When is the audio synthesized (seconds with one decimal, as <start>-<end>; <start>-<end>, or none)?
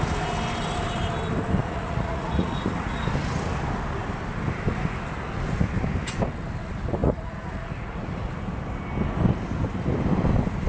1.6-3.0; 7.0-8.3